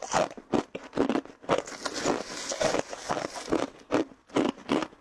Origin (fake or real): real